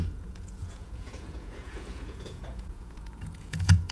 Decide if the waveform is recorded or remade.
remade